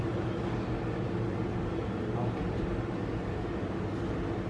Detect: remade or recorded recorded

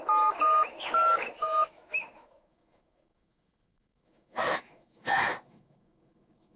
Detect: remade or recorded remade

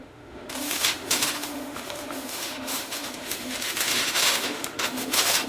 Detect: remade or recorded remade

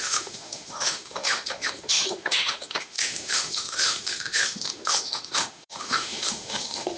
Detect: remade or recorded remade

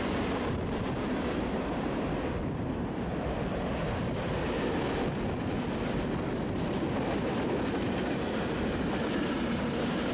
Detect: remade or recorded recorded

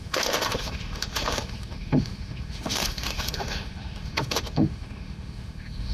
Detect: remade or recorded remade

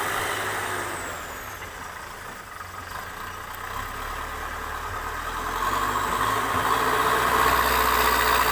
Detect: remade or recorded recorded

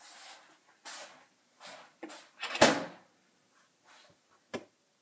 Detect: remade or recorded recorded